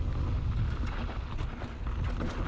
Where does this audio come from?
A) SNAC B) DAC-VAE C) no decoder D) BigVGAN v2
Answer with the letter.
C